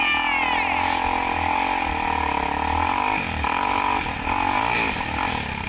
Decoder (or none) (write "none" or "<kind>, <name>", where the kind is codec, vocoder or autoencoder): none